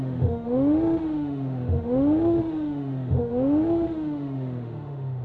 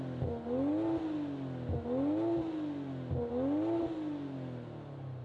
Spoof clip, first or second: first